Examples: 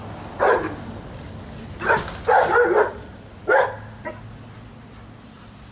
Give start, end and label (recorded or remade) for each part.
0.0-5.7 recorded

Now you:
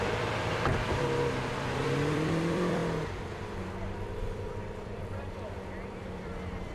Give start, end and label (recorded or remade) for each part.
0.0-2.8 remade; 2.8-4.2 recorded; 4.2-6.7 remade

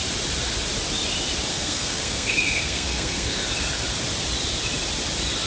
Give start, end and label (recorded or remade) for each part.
0.0-1.5 recorded; 1.5-3.4 remade; 3.4-5.5 recorded

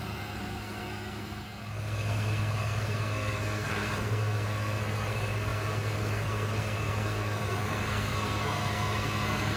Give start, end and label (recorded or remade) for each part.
0.0-9.6 remade

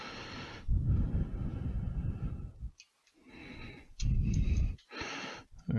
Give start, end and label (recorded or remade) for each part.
0.0-3.4 recorded; 3.4-4.1 remade; 4.1-5.8 recorded

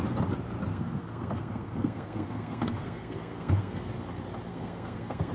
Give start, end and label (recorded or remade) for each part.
0.0-0.7 recorded; 0.7-3.9 remade; 3.9-4.5 recorded; 4.5-5.3 remade